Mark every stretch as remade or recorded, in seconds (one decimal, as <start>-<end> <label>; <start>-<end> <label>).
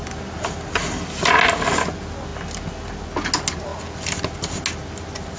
0.0-5.4 recorded